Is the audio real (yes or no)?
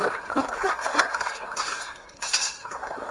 no